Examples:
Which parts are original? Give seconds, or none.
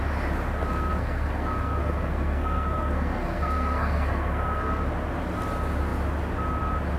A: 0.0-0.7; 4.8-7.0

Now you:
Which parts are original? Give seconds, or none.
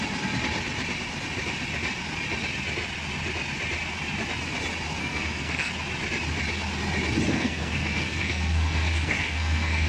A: 0.0-5.0; 5.7-7.3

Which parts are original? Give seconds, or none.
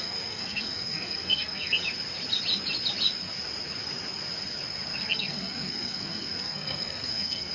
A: 1.8-5.0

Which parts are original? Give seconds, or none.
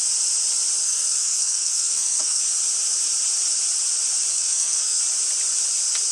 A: 0.0-0.8; 2.4-4.3; 5.0-6.1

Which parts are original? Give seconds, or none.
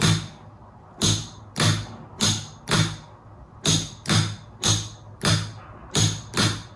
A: 0.0-6.8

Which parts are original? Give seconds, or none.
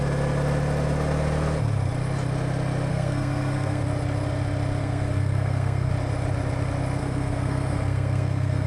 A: 0.0-2.9; 3.8-4.8; 5.9-7.0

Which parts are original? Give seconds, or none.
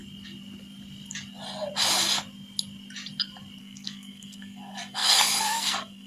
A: 0.0-3.6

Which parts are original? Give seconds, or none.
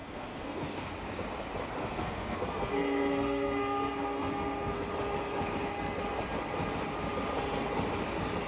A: 0.9-1.8; 4.9-8.5